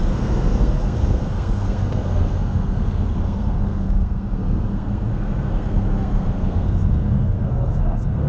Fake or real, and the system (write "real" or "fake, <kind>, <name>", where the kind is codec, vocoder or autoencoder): fake, codec, SNAC